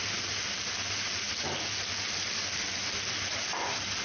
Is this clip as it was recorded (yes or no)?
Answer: yes